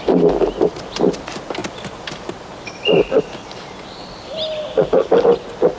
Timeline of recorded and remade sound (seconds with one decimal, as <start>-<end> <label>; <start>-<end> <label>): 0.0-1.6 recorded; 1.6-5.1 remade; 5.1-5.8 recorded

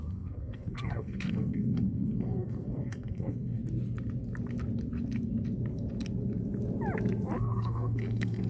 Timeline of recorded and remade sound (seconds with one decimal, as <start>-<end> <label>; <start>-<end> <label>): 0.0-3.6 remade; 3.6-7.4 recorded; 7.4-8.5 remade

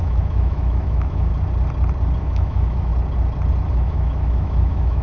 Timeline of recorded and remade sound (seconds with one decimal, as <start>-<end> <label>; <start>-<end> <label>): 0.0-1.3 remade; 1.3-2.2 recorded; 2.2-2.9 remade; 2.9-3.7 recorded; 3.7-5.0 remade